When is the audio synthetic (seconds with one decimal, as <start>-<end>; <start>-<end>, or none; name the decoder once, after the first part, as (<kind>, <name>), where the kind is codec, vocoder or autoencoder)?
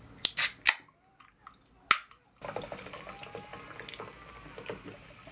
none